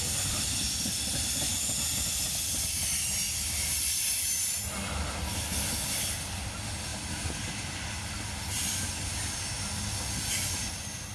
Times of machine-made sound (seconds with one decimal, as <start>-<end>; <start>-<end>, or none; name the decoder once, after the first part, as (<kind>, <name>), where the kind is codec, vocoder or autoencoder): none